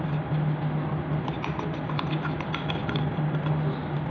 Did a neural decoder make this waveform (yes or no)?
no